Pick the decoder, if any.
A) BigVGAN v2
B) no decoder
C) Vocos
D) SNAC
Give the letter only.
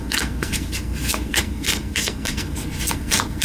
D